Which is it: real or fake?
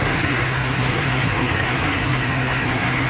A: fake